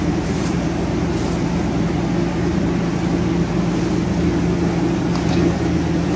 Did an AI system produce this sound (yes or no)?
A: no